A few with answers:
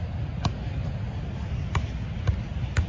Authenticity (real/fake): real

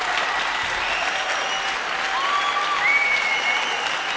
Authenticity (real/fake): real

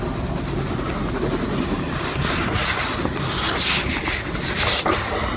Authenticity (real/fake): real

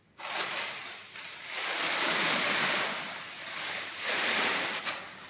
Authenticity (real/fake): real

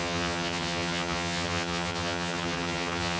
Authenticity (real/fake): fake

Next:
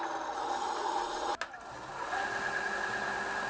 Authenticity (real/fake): real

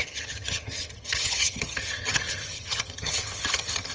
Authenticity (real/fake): fake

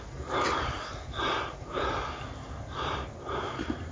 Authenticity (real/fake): real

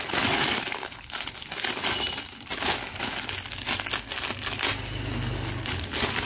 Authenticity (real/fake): real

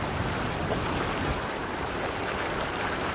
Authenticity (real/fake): real